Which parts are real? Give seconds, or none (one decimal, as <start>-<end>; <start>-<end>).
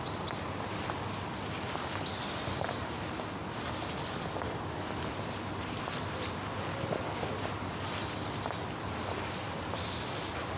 0.0-10.6